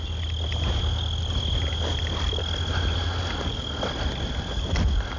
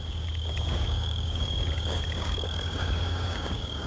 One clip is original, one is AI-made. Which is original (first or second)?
first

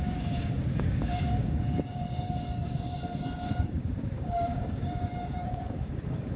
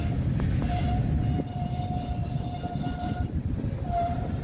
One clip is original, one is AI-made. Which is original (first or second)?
second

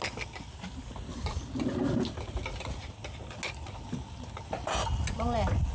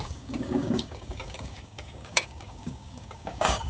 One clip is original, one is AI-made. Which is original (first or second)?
first